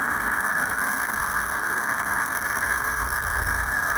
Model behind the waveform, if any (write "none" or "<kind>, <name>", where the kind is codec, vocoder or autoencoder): codec, SNAC